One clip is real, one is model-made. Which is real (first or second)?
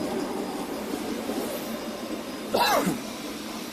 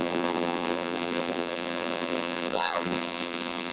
first